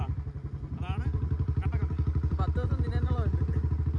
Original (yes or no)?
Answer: no